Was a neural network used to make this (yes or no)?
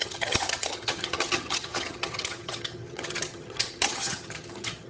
yes